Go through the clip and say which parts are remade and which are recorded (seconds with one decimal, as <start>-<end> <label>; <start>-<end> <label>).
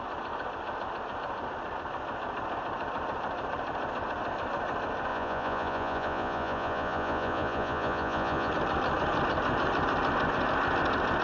0.0-5.1 recorded; 5.1-8.5 remade; 8.5-11.2 recorded